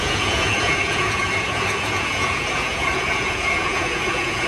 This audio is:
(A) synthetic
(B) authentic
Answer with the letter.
A